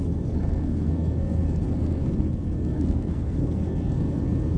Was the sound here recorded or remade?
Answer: remade